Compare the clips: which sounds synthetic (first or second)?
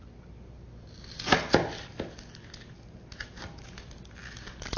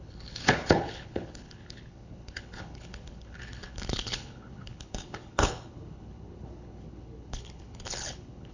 second